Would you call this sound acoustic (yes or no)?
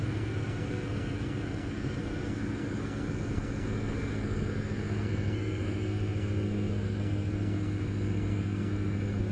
no